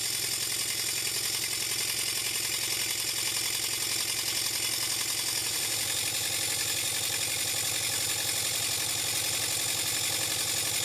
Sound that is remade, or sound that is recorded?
recorded